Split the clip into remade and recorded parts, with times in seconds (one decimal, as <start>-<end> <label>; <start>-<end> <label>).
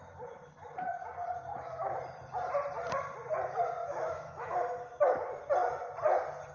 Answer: 0.0-1.5 recorded; 1.5-2.0 remade; 2.0-3.8 recorded; 3.8-5.0 remade; 5.0-6.5 recorded